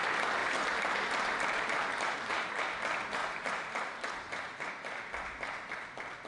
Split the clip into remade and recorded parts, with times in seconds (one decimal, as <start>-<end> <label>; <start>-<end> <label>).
0.0-0.4 recorded; 0.4-2.6 remade; 2.6-3.2 recorded; 3.2-4.7 remade; 4.7-6.3 recorded

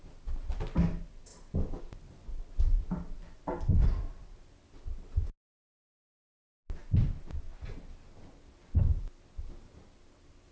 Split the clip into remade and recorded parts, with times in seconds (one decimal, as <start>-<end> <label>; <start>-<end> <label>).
0.0-2.7 recorded; 2.7-4.2 remade; 4.2-10.5 recorded

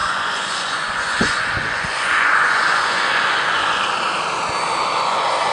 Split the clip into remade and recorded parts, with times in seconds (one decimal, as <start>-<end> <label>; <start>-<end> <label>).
0.0-3.8 remade; 3.8-5.0 recorded; 5.0-5.5 remade

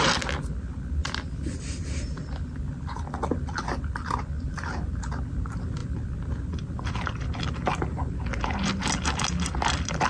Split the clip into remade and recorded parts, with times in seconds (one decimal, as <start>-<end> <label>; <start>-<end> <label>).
0.0-10.1 recorded